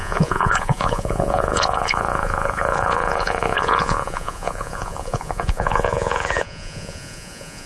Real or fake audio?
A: fake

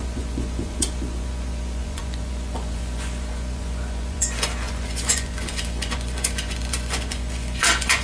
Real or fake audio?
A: fake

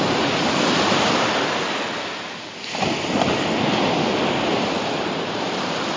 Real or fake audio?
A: real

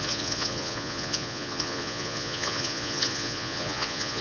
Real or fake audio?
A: fake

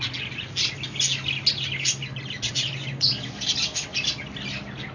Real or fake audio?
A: real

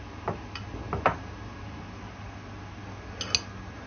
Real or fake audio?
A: real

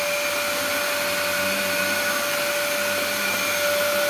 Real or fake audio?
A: real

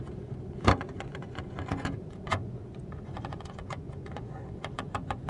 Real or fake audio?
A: fake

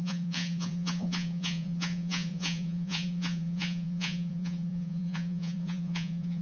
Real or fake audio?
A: fake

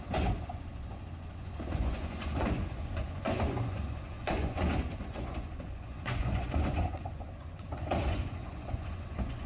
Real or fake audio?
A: fake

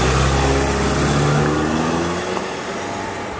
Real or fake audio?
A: real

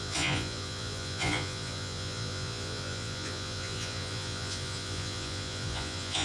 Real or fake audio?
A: fake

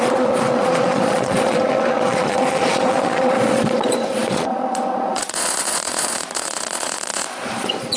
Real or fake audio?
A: fake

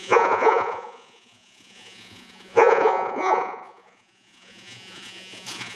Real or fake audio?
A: fake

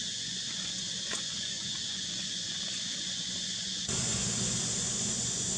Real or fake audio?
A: fake